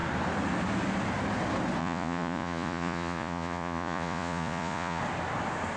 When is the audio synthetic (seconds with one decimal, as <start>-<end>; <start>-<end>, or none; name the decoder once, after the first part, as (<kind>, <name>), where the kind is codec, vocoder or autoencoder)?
1.8-5.0 (vocoder, Vocos)